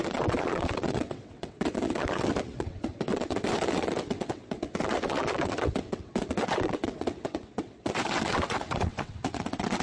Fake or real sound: fake